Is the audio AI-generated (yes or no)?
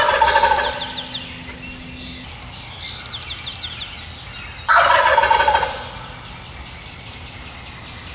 no